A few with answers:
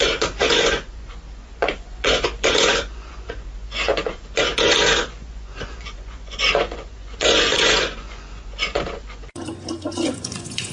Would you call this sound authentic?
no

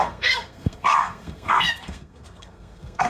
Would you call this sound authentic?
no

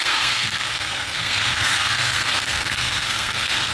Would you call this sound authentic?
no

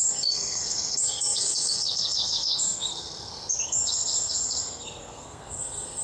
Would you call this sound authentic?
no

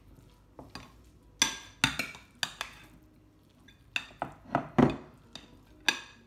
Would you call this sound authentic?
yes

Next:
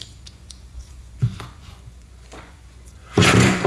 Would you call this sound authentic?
no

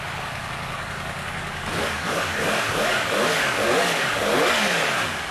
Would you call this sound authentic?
no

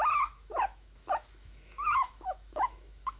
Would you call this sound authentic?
no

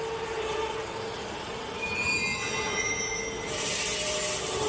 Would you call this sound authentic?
yes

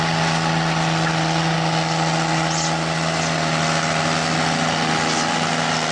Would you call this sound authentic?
yes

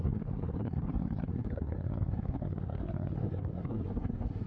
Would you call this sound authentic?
no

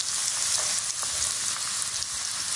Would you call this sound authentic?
yes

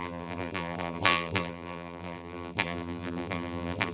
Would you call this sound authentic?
no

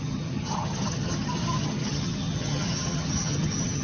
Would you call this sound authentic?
no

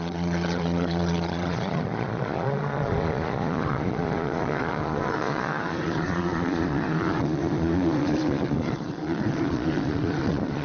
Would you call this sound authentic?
no